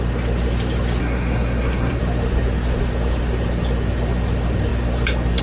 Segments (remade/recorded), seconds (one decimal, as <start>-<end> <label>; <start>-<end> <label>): 0.0-1.0 recorded; 1.0-2.0 remade; 2.0-5.4 recorded